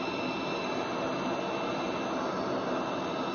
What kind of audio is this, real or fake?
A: real